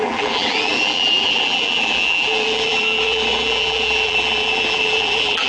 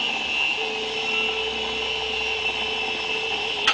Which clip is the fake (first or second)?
first